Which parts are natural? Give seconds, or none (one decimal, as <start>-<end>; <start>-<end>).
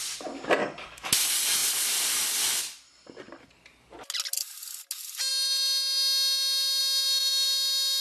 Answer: 0.0-0.6; 1.1-8.0